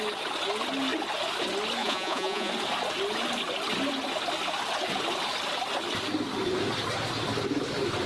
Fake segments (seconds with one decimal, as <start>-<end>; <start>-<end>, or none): 1.8-2.5